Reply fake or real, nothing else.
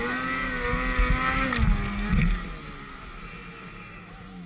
real